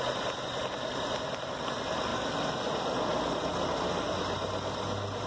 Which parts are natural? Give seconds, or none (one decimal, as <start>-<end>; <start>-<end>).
0.0-5.3